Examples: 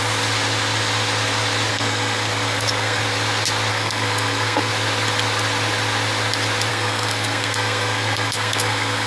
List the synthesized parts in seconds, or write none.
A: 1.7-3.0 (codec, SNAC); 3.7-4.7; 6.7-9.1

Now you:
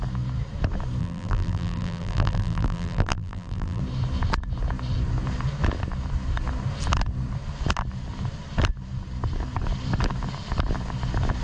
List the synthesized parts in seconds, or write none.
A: 1.0-3.8 (vocoder, BigVGAN v2)

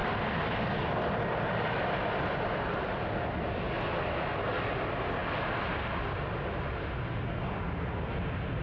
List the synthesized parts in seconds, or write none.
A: 0.0-1.8 (vocoder, BigVGAN v2); 5.2-5.7

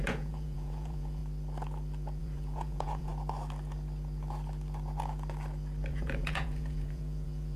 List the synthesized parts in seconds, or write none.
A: 0.0-1.2 (vocoder, Vocos); 2.2-3.1; 5.9-7.6

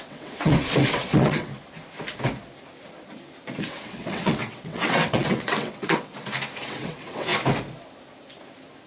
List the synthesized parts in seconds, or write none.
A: 0.0-1.5 (vocoder, WaveNeXt); 3.6-6.1; 6.6-7.3